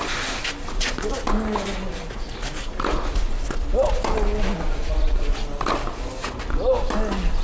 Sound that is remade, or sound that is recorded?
recorded